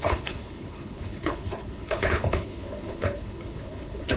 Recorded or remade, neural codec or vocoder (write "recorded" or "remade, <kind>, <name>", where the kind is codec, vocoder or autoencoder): remade, codec, HILCodec